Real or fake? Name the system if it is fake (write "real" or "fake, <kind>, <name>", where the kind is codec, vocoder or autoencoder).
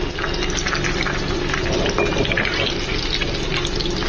real